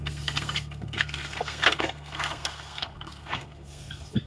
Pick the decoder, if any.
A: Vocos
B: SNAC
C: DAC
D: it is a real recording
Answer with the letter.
B